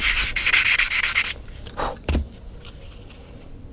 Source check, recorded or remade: recorded